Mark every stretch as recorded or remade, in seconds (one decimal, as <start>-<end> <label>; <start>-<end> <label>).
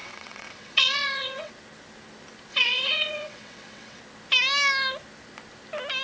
0.0-1.5 remade; 1.5-2.5 recorded; 2.5-4.0 remade; 4.0-6.0 recorded